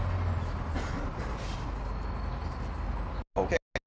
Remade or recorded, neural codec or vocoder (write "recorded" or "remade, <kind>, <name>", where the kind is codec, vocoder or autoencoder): recorded